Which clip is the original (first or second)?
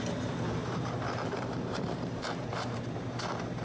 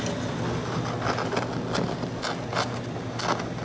second